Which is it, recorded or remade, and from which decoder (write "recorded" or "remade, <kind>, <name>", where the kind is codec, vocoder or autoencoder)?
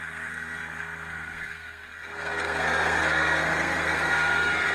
remade, codec, SNAC